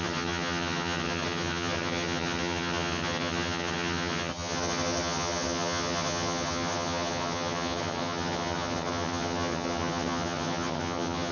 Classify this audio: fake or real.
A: fake